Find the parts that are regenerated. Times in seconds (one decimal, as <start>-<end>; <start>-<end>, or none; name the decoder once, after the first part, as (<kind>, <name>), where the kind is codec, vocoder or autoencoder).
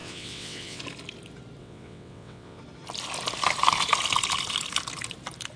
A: 0.0-0.8 (vocoder, WaveNeXt); 1.6-2.6